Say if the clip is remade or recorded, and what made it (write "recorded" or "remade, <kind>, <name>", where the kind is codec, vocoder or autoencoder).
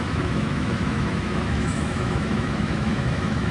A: remade, autoencoder, DAC-VAE